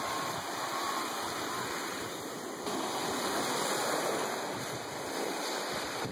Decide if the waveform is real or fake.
real